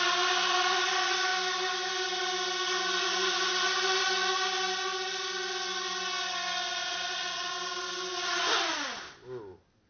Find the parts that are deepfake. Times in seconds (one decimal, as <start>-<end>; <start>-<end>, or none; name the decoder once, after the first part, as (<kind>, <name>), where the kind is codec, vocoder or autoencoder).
6.8-7.5 (vocoder, Vocos)